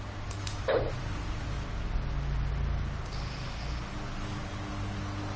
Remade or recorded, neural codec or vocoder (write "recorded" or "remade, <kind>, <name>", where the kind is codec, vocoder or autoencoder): recorded